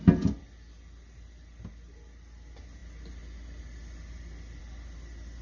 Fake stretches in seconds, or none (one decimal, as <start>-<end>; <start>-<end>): none